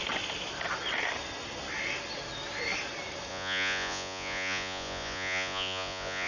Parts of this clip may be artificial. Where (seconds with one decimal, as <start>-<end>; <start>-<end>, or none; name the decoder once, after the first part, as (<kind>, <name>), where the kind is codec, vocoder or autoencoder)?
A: 3.3-6.3 (vocoder, Vocos)